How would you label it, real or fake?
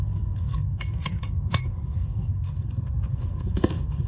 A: fake